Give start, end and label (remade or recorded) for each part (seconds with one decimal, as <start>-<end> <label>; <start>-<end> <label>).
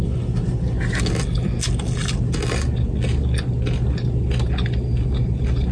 0.0-5.7 recorded